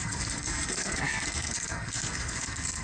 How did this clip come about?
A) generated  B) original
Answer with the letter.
A